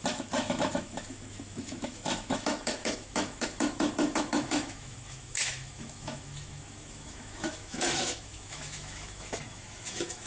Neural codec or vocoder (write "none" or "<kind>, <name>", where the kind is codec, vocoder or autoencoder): autoencoder, DAC-VAE